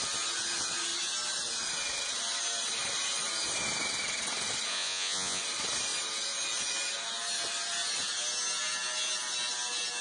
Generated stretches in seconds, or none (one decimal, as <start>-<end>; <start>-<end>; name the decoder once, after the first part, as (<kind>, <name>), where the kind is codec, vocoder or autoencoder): 4.7-5.4 (vocoder, Vocos)